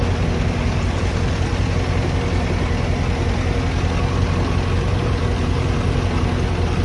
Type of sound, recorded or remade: recorded